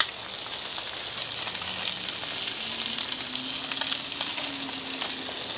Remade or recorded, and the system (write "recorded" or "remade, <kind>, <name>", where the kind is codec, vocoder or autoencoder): recorded